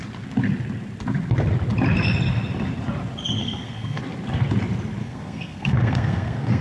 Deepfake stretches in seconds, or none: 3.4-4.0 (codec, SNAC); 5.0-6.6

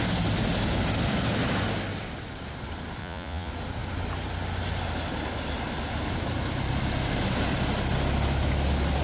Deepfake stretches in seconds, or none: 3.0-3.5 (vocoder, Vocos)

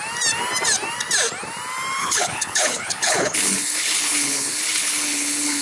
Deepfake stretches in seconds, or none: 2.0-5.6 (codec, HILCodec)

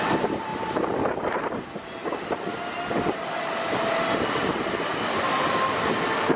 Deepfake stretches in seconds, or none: none

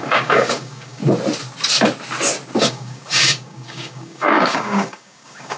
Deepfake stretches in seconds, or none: 0.0-1.0 (codec, DAC); 2.6-5.6